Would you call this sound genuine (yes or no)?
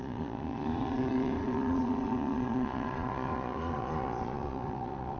no